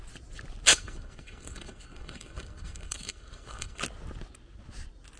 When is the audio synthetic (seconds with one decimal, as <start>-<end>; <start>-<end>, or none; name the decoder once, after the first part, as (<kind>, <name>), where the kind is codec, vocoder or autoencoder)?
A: 0.7-3.8 (codec, SNAC)